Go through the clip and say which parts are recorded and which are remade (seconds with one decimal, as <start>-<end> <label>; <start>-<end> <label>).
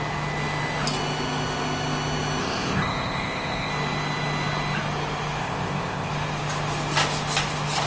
0.0-2.4 recorded; 2.4-3.7 remade; 3.7-5.4 recorded; 5.4-6.1 remade; 6.1-7.9 recorded